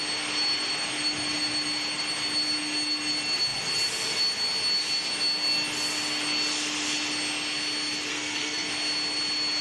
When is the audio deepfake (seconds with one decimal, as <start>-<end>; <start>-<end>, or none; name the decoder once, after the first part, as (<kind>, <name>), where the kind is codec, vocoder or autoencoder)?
8.1-8.7 (codec, SNAC)